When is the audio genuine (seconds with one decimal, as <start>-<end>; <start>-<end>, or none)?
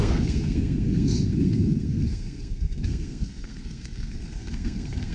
none